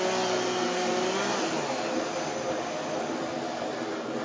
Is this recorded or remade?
recorded